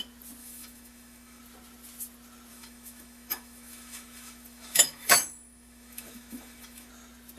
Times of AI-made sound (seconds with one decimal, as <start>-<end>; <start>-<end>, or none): 0.4-1.4; 2.5-6.9